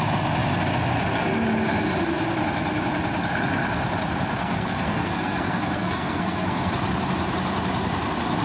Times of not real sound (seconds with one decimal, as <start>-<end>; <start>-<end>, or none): 4.4-6.7